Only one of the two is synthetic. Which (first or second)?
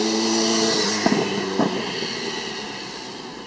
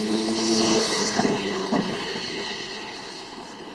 second